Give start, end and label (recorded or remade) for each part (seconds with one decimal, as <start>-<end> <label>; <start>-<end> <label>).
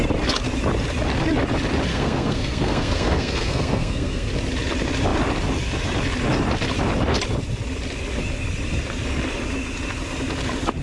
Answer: 0.0-1.9 recorded; 1.9-4.3 remade; 4.3-10.8 recorded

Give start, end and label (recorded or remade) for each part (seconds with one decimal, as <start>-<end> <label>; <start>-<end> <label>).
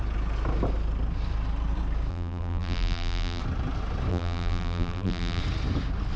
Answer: 0.0-2.1 recorded; 2.1-3.4 remade; 3.4-4.1 recorded; 4.1-5.4 remade; 5.4-6.2 recorded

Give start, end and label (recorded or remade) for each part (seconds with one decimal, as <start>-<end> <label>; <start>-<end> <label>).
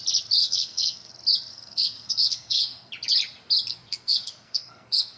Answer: 0.0-0.4 recorded; 0.4-1.1 remade; 1.1-1.5 recorded; 1.5-2.9 remade; 2.9-3.7 recorded; 3.7-5.2 remade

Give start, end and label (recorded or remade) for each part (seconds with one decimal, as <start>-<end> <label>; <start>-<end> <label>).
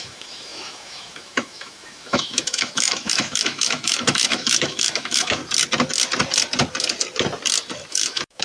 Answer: 0.0-5.4 remade; 5.4-7.9 recorded; 7.9-8.4 remade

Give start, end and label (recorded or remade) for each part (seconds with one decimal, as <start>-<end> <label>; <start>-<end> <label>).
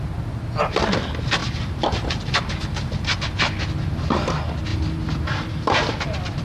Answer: 0.0-1.4 recorded; 1.4-3.4 remade; 3.4-4.7 recorded; 4.7-5.9 remade; 5.9-6.4 recorded